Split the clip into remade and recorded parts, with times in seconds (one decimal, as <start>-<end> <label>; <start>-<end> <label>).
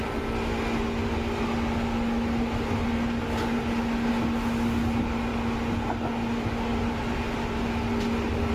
0.0-8.5 recorded